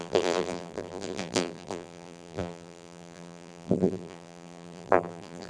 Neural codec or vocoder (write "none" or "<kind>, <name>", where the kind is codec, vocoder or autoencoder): vocoder, BigVGAN v2